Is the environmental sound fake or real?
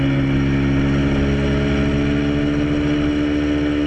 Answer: real